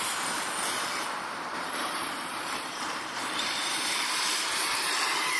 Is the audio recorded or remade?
remade